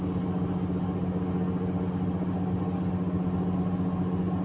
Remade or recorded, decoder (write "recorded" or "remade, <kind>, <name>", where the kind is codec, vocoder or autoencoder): recorded